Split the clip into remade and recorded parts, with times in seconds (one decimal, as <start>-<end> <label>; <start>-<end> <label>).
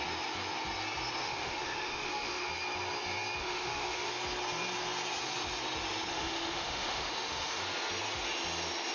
0.0-1.2 recorded; 1.2-2.5 remade; 2.5-3.4 recorded; 3.4-4.1 remade; 4.1-6.1 recorded; 6.1-7.6 remade; 7.6-8.9 recorded